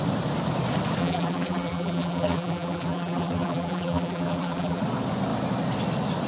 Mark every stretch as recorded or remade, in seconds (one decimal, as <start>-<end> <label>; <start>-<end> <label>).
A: 0.0-1.0 recorded; 1.0-4.8 remade; 4.8-6.3 recorded